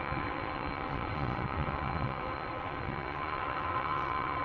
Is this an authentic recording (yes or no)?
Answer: no